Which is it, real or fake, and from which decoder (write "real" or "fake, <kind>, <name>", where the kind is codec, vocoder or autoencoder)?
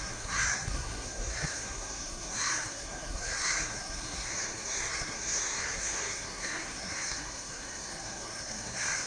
fake, codec, SNAC